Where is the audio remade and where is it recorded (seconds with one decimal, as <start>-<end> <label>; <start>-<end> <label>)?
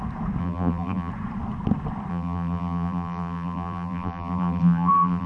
0.0-0.4 recorded; 0.4-1.1 remade; 1.1-2.1 recorded; 2.1-5.3 remade